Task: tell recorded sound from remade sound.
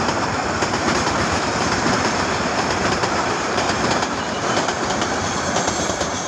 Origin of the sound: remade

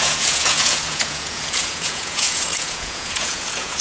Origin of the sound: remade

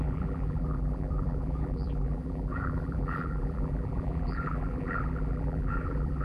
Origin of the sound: remade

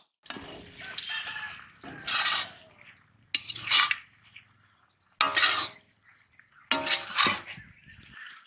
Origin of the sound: recorded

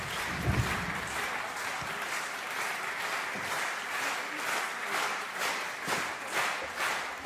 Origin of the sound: remade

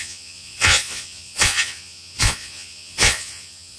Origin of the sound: remade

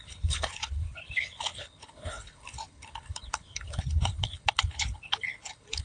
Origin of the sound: remade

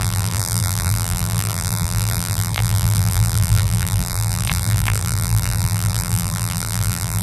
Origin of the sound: remade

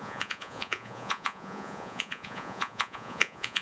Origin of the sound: remade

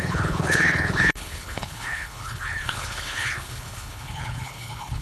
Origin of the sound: remade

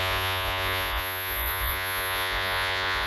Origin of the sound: remade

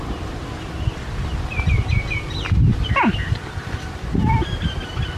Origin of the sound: recorded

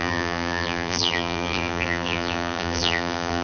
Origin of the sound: remade